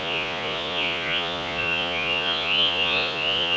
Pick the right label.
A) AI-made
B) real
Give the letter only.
A